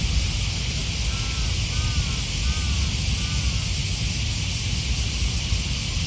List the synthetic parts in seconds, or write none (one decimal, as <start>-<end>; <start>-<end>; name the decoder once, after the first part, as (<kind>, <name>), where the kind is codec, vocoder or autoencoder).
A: none